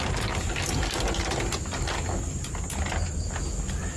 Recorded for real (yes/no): yes